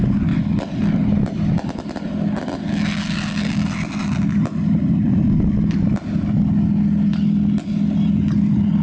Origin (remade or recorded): recorded